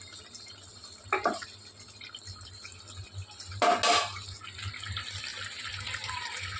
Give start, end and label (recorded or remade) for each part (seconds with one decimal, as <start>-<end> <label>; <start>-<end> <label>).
0.0-5.3 recorded; 5.3-6.6 remade